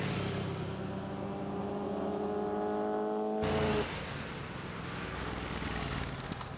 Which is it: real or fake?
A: real